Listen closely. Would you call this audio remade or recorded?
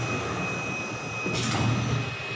recorded